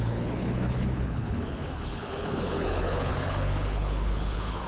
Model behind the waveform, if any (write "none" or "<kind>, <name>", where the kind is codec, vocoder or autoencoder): codec, HILCodec